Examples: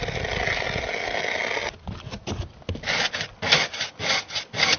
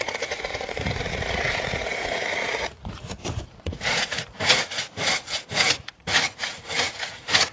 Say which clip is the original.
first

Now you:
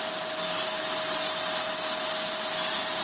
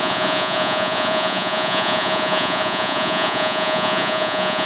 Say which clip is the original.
first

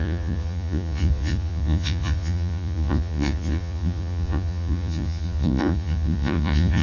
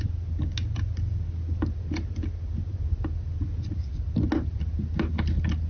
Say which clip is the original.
second